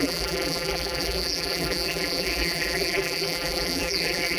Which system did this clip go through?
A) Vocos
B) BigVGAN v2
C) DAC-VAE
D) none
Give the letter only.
B